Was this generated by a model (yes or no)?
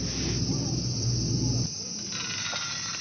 no